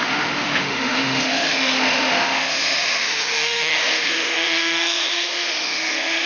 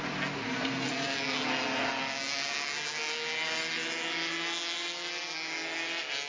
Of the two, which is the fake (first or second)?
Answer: first